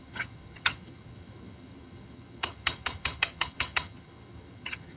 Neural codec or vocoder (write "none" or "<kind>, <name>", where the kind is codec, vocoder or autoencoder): vocoder, HiFi-GAN